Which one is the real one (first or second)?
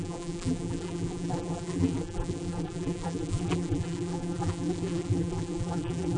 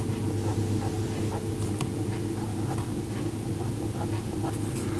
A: second